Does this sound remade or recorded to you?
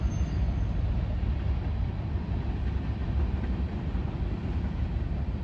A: recorded